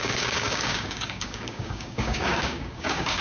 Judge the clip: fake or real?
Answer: fake